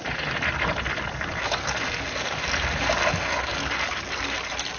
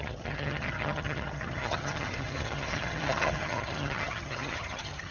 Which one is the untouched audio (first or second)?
first